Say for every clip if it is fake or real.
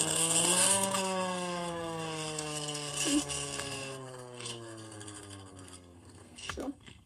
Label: fake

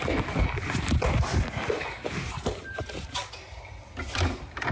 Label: real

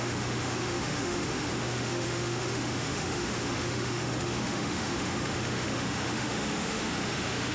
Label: fake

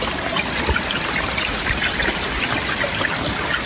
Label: real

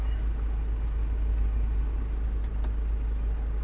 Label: real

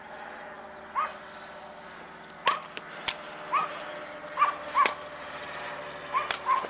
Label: real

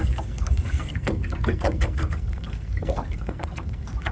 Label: fake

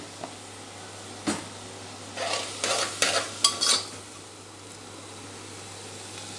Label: real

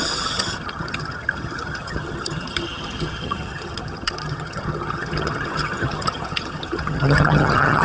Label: fake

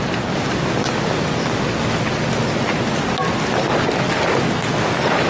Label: real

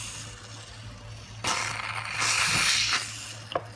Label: real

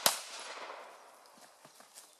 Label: real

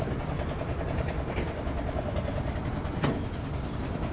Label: real